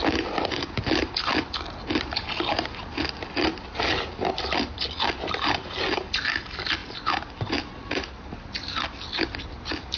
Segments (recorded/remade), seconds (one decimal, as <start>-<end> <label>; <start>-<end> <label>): 0.0-10.0 recorded